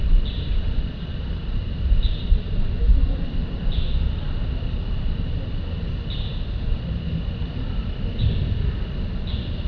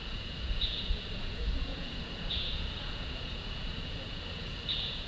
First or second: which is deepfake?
second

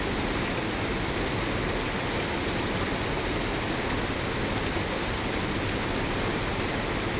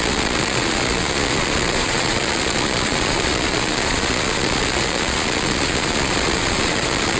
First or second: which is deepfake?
second